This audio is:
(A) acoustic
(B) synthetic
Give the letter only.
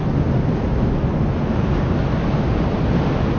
A